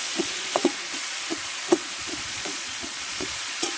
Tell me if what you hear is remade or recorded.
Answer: remade